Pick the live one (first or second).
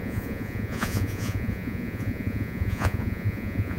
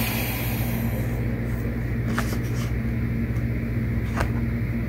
second